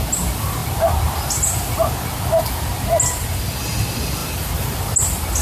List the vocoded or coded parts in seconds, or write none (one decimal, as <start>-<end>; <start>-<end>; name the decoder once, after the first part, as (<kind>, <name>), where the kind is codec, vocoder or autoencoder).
none